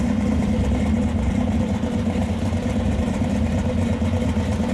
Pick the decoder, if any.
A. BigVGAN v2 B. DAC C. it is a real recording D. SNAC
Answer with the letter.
A